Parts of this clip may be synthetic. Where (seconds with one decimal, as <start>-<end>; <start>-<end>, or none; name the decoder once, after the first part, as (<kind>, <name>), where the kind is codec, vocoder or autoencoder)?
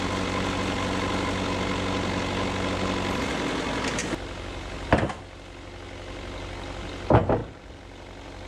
none